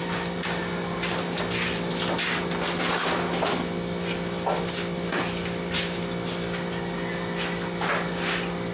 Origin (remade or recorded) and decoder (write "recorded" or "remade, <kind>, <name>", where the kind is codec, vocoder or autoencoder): recorded